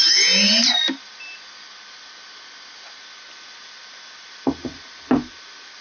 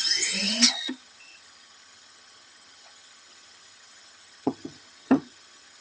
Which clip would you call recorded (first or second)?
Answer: first